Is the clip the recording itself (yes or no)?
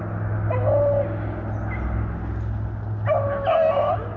yes